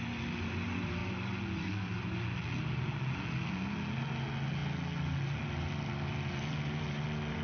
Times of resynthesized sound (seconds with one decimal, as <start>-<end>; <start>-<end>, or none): none